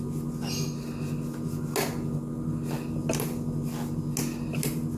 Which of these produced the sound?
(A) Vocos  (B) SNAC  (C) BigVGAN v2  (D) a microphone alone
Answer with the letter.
D